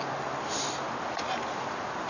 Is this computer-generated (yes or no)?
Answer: no